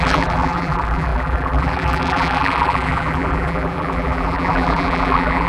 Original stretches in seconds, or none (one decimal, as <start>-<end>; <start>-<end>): none